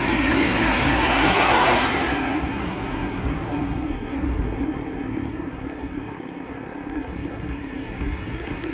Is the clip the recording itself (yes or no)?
no